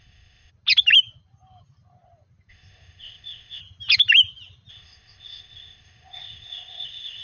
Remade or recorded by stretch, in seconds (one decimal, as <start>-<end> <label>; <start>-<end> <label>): 0.0-0.5 remade; 0.5-2.5 recorded; 2.5-3.6 remade; 3.6-4.7 recorded; 4.7-7.2 remade